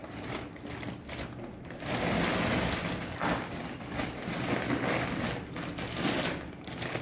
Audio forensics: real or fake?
real